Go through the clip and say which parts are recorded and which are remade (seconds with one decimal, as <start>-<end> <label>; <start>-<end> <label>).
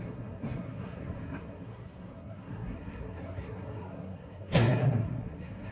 0.0-5.7 remade